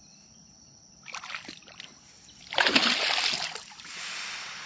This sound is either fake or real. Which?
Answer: real